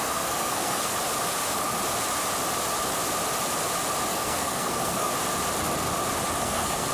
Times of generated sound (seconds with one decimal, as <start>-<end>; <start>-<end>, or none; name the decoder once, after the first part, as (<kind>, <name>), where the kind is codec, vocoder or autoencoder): 0.0-0.9 (codec, SNAC); 4.1-5.1; 6.4-6.9